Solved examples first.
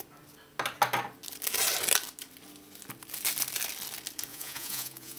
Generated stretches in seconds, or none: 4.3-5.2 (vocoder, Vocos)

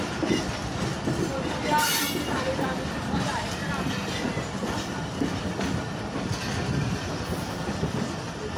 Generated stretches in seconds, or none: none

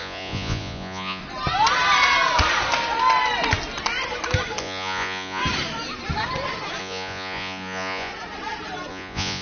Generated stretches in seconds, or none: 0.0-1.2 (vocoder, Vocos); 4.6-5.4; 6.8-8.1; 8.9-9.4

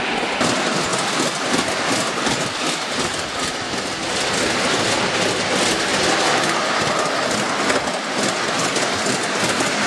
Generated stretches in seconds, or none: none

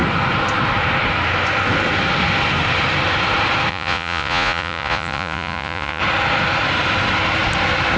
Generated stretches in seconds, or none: 3.7-6.0 (vocoder, Vocos)

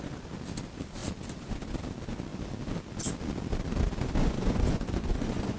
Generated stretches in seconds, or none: 4.2-5.6 (vocoder, Vocos)

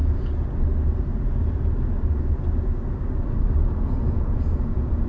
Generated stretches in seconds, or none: 3.6-5.1 (vocoder, Vocos)

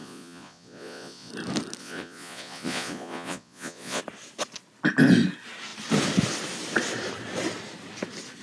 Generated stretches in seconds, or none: 0.0-1.3 (vocoder, Vocos); 1.8-4.0